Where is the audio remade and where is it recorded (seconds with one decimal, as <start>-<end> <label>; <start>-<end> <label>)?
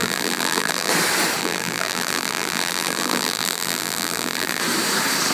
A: 0.0-0.9 remade; 0.9-1.4 recorded; 1.4-4.6 remade; 4.6-5.3 recorded